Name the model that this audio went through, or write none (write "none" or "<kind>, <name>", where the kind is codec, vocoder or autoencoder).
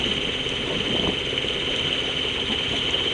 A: none